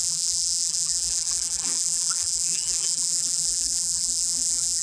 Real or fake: fake